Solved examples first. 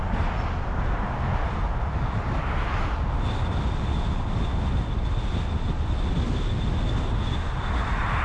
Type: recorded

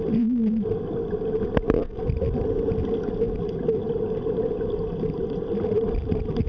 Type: recorded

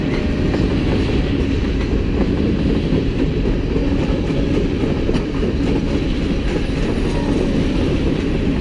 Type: recorded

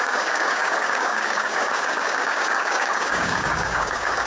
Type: remade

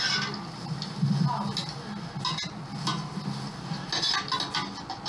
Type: recorded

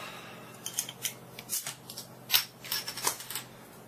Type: recorded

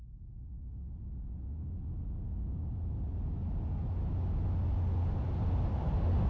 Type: recorded